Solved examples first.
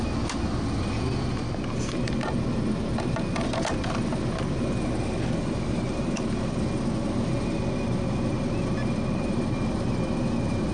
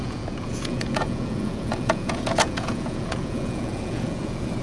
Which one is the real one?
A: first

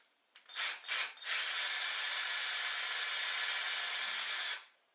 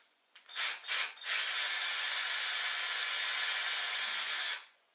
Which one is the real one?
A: first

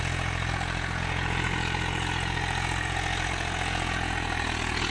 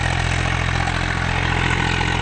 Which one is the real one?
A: second